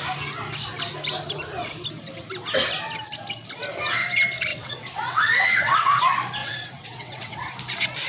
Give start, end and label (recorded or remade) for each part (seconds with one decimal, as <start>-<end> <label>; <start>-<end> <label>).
0.0-4.5 recorded; 4.5-6.0 remade; 6.0-6.4 recorded; 6.4-7.4 remade; 7.4-8.1 recorded